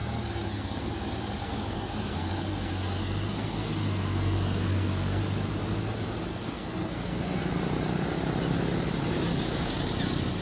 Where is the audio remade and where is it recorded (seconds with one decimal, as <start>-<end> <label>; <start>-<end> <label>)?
0.0-0.9 remade; 0.9-1.4 recorded; 1.4-5.2 remade; 5.2-6.3 recorded; 6.3-7.5 remade; 7.5-10.4 recorded